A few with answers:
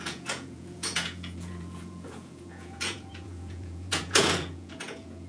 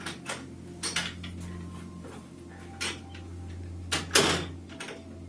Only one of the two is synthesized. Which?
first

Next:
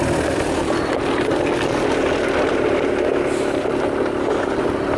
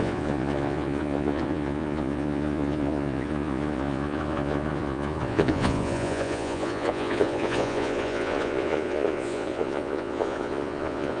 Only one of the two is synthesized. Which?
second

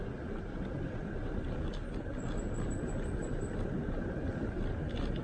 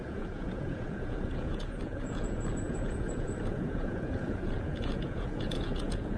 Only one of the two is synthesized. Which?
second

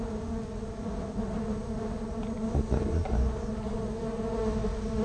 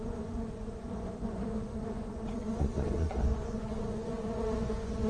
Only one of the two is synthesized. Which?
second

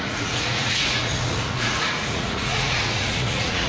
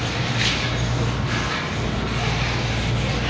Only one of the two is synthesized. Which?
first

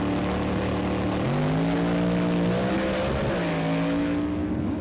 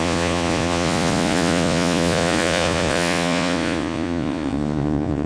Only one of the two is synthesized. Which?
second